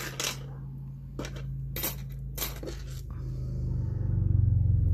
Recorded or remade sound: recorded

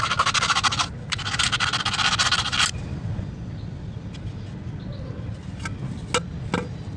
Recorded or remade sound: recorded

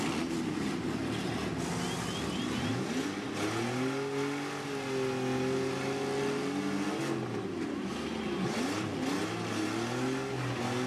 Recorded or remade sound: recorded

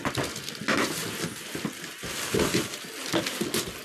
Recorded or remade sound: recorded